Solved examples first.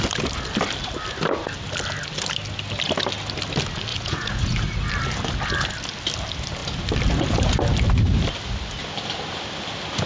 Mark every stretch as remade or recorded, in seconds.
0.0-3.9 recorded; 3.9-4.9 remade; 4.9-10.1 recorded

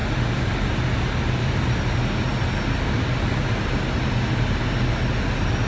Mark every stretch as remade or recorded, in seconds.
0.0-5.7 recorded

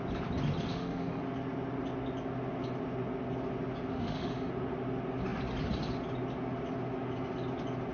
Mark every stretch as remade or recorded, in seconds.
0.0-0.7 recorded; 0.7-1.2 remade; 1.2-3.9 recorded; 3.9-4.5 remade; 4.5-7.9 recorded

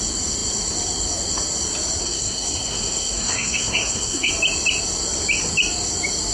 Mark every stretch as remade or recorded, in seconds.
0.0-2.0 recorded; 2.0-4.3 remade; 4.3-6.3 recorded